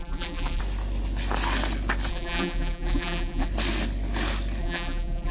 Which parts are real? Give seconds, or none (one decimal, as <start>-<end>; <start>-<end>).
0.6-2.1; 3.5-4.6